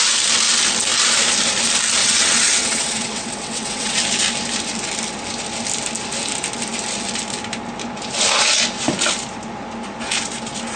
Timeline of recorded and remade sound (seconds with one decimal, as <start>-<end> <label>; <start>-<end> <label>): 0.0-2.0 recorded; 2.0-4.0 remade; 4.0-10.8 recorded